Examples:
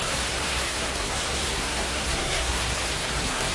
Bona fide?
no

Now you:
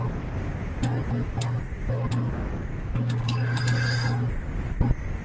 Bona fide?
yes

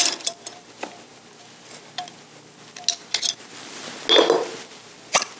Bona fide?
yes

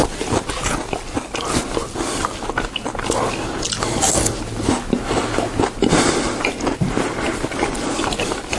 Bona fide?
yes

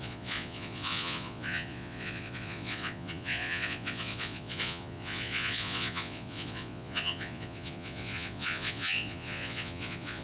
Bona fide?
no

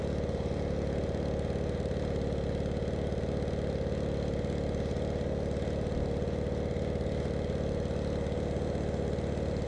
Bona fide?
yes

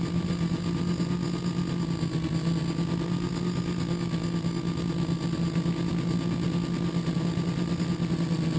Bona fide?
yes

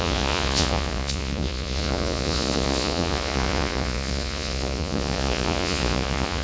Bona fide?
no